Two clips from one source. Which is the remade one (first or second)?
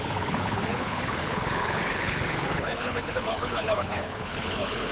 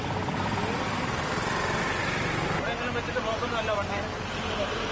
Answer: first